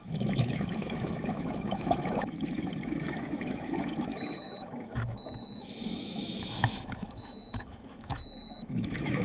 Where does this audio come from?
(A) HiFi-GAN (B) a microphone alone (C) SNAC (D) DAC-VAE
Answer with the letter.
D